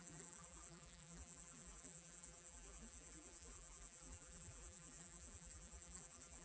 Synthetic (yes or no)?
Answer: yes